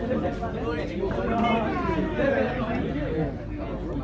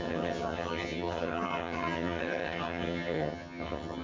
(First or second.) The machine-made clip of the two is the second